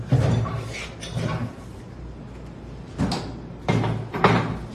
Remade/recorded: recorded